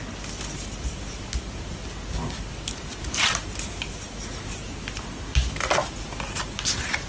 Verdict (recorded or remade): recorded